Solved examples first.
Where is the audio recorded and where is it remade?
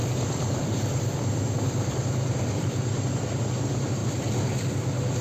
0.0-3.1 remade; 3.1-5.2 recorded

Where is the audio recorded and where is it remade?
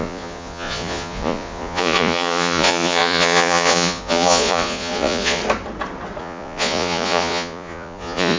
0.0-5.4 remade; 5.4-6.2 recorded; 6.2-8.4 remade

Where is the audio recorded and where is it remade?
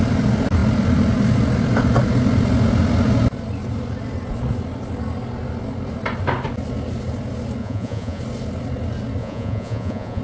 0.0-7.6 recorded; 7.6-8.2 remade; 8.2-9.2 recorded; 9.2-10.2 remade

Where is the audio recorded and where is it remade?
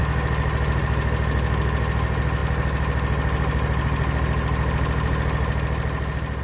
0.0-6.4 recorded